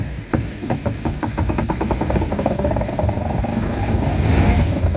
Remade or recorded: remade